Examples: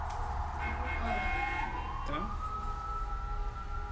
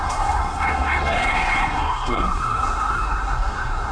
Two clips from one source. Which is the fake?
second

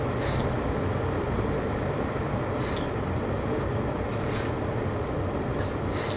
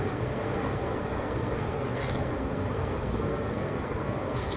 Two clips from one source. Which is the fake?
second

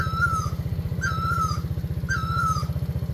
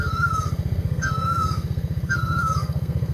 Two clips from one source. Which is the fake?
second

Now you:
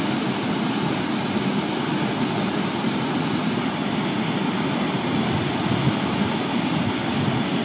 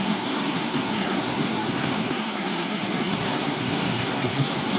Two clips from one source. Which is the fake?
second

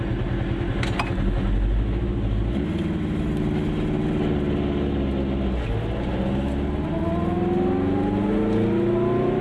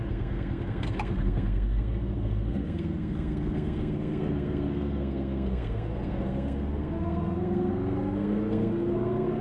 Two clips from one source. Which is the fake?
second